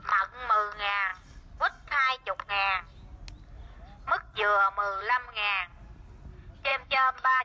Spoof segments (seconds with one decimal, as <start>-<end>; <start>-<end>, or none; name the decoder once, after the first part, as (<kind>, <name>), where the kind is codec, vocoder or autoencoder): 6.7-7.4 (autoencoder, DAC-VAE)